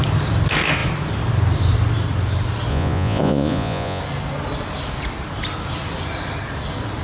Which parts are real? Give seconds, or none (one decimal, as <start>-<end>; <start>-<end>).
0.0-2.7; 4.0-7.0